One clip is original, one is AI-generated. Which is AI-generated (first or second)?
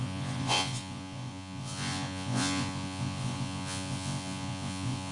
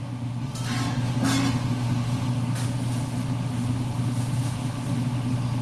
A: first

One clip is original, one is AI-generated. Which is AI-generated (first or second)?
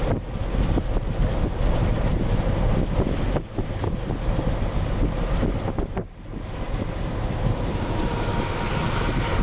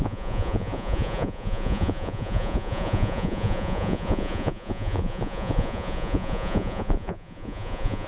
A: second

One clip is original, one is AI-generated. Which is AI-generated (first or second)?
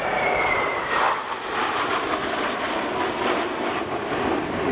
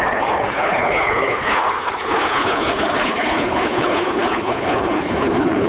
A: second